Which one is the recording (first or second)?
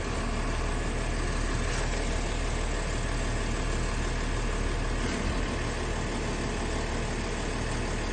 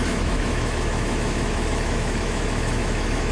first